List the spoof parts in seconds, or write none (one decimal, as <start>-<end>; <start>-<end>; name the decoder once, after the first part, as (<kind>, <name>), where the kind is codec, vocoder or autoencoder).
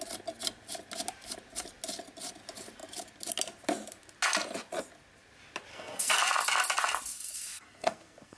5.7-6.2 (codec, SNAC); 7.1-8.4